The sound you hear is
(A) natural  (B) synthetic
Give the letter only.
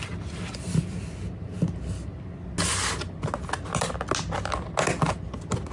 A